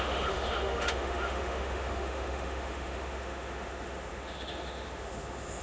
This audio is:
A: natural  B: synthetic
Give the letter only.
B